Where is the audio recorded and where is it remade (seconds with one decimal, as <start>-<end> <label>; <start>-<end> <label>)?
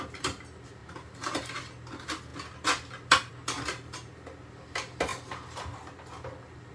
0.0-0.8 recorded; 0.8-1.6 remade; 1.6-6.7 recorded